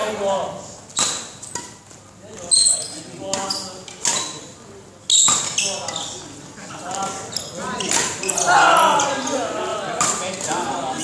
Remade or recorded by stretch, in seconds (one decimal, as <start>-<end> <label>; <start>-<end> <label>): 0.0-9.7 recorded; 9.7-11.0 remade

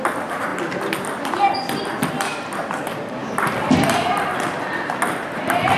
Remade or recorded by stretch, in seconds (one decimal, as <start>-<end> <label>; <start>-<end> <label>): 0.0-3.2 recorded; 3.2-3.7 remade; 3.7-5.8 recorded